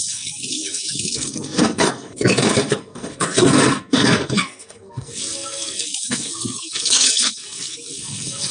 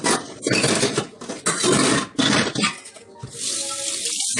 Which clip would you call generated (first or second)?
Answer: first